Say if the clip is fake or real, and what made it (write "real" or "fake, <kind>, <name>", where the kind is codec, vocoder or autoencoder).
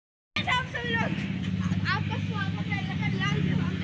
real